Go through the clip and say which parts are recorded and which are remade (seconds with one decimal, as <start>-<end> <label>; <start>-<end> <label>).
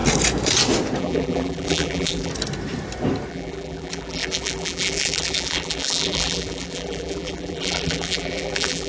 0.0-1.0 recorded; 1.0-2.3 remade; 2.3-3.3 recorded; 3.3-8.9 remade